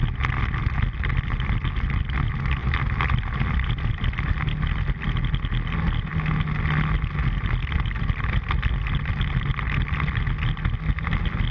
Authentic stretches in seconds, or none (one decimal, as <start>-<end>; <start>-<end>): 0.0-11.5